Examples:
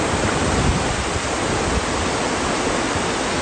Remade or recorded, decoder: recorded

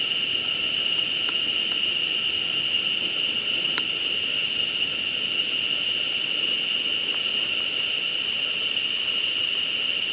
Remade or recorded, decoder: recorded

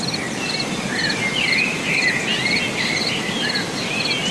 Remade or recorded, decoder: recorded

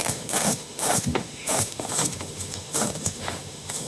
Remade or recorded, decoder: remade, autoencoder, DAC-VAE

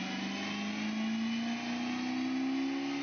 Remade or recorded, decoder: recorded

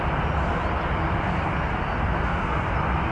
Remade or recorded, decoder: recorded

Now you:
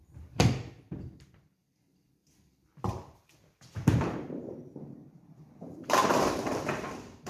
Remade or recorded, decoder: remade, vocoder, BigVGAN v2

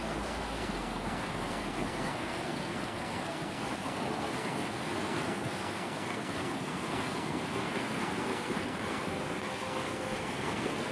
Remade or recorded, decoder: remade, codec, SNAC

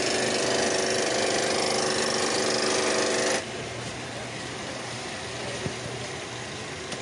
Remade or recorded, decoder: recorded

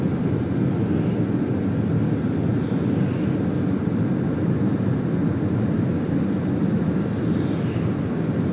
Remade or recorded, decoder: recorded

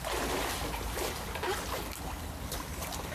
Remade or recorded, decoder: recorded